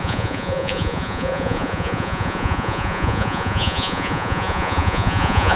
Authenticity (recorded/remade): remade